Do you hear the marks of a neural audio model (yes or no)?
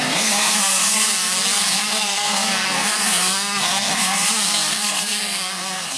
yes